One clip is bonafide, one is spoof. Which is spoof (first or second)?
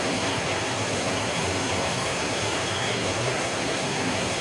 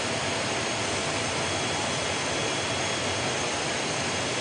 first